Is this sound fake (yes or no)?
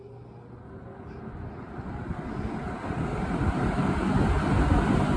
no